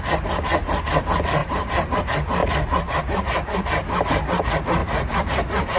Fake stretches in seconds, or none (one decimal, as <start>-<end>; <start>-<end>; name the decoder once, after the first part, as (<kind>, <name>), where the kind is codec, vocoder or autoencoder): 1.4-2.0 (vocoder, BigVGAN v2); 2.4-3.0; 4.8-5.8